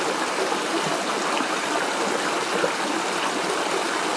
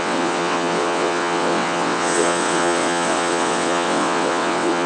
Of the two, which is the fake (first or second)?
second